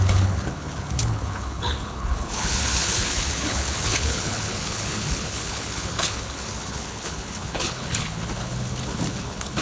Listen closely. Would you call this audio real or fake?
fake